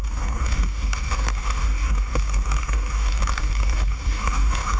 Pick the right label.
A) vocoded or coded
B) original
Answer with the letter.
A